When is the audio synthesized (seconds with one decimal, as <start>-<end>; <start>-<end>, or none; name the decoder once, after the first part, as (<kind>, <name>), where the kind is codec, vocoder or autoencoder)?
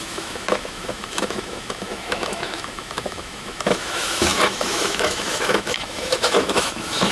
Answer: 0.0-7.1 (autoencoder, DAC-VAE)